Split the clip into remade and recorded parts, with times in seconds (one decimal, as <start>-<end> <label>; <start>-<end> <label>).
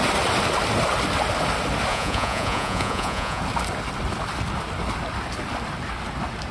0.0-1.9 recorded; 1.9-3.4 remade; 3.4-6.5 recorded